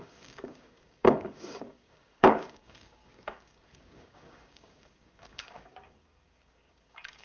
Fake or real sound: fake